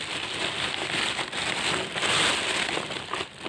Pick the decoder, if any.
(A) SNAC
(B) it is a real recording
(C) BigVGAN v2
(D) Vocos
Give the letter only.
B